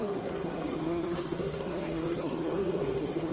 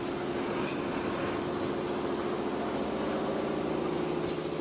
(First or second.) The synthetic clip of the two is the first